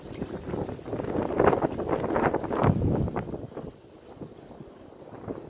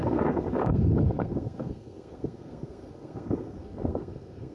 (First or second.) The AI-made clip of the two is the second